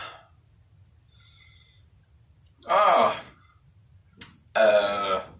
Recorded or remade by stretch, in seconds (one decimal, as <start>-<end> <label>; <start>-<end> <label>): 0.0-5.4 recorded